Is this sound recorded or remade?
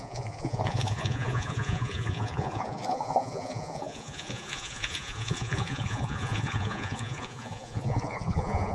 remade